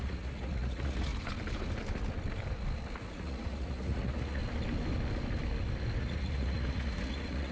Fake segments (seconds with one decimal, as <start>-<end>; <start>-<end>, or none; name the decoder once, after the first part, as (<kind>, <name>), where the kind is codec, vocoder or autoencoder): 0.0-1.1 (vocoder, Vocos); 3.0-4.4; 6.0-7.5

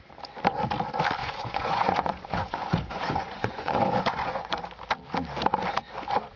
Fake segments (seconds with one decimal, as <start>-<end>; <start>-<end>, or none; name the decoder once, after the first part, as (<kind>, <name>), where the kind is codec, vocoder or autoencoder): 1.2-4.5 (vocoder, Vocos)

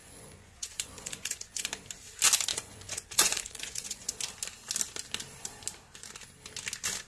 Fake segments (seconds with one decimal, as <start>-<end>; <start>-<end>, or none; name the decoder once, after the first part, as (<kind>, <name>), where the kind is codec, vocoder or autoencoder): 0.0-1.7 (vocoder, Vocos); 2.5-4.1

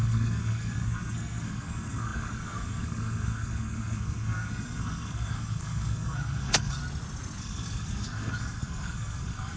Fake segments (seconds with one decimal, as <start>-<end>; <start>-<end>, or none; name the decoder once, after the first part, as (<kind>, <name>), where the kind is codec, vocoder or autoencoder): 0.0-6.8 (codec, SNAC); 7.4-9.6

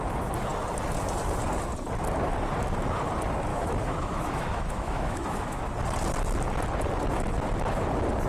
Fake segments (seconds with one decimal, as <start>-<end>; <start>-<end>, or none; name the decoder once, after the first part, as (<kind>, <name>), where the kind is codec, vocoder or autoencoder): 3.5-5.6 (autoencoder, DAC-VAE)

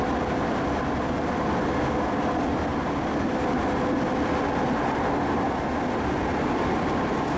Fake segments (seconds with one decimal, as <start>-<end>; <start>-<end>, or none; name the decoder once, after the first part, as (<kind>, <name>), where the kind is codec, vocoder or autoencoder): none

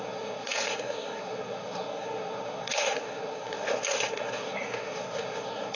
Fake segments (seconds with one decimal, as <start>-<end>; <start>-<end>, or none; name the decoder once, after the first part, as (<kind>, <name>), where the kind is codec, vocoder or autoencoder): 0.0-5.8 (codec, SNAC)